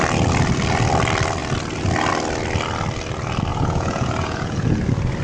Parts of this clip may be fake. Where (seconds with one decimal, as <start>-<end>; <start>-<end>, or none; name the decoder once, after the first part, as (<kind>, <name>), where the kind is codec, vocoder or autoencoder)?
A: 3.5-4.8 (vocoder, Vocos)